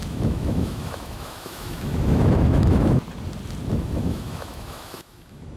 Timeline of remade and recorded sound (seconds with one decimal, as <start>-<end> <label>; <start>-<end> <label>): 0.0-3.0 remade; 3.0-3.7 recorded; 3.7-5.6 remade